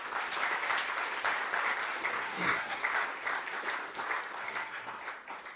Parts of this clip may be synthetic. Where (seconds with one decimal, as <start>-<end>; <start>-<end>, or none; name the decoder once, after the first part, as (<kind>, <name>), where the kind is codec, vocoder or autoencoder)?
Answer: 2.1-2.8 (codec, SNAC); 4.4-5.0